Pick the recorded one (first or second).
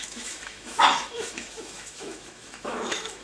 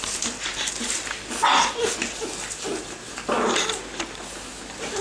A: second